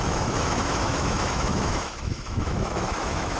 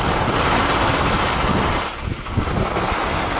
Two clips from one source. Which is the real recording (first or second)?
second